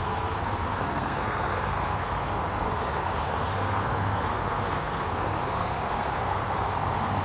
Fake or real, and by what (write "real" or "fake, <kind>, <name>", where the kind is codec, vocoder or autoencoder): fake, codec, SNAC